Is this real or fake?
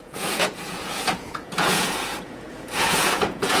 fake